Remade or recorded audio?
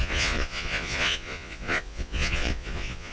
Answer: remade